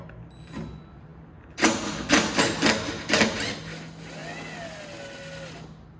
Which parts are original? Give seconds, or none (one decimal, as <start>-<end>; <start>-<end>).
0.0-6.0